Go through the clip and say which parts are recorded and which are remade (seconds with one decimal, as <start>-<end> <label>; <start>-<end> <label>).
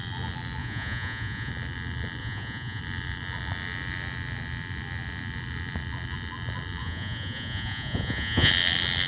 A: 0.0-0.6 recorded; 0.6-1.5 remade; 1.5-2.2 recorded; 2.2-2.8 remade; 2.8-6.8 recorded; 6.8-8.5 remade; 8.5-9.1 recorded